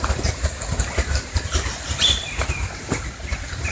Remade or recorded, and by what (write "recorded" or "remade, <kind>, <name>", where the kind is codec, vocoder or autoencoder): recorded